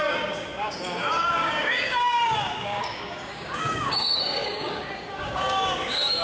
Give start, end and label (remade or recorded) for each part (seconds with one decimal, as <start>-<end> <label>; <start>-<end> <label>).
0.0-6.2 remade